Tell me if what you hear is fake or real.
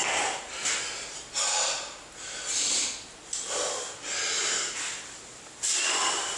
real